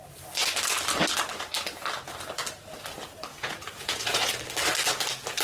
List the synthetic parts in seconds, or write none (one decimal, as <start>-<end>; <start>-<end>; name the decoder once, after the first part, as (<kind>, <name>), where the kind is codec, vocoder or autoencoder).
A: 3.3-4.3 (vocoder, Vocos)